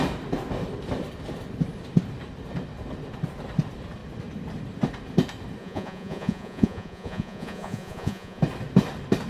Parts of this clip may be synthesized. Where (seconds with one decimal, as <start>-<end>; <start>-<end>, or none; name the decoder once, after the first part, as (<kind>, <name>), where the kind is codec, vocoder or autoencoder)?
5.6-8.4 (vocoder, Vocos)